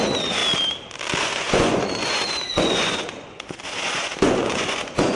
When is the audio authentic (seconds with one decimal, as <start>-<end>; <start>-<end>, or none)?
0.4-1.2